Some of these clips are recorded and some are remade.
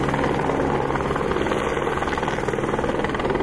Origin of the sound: recorded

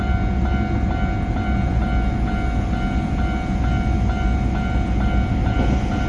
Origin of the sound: recorded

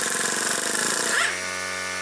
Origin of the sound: recorded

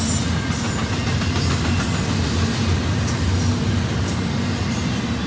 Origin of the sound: recorded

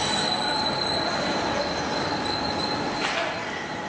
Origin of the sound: recorded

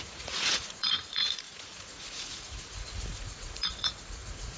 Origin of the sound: remade